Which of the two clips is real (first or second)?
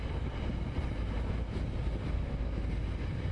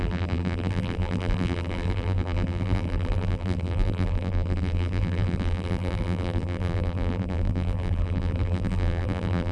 first